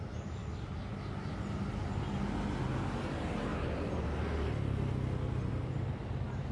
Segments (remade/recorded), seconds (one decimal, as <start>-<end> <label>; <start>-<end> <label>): 0.0-0.4 remade; 0.4-3.1 recorded; 3.1-3.5 remade; 3.5-5.5 recorded; 5.5-6.5 remade